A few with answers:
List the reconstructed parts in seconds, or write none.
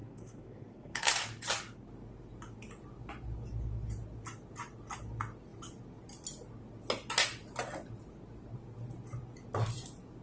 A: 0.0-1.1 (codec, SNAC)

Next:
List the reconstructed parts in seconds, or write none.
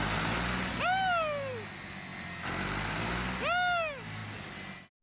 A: none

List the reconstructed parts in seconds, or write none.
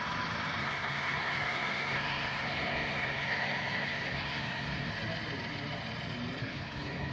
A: 0.6-4.9 (codec, SNAC); 6.4-7.1